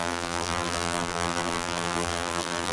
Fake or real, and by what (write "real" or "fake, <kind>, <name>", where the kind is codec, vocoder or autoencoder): fake, vocoder, BigVGAN v2